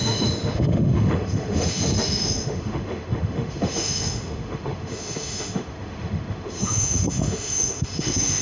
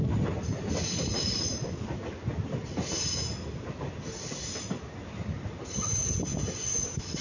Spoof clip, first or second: first